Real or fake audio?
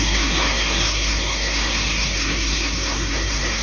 fake